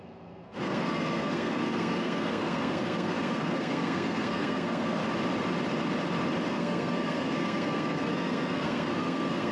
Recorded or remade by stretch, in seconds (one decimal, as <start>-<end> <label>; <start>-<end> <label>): 0.0-5.0 remade; 5.0-6.5 recorded; 6.5-9.5 remade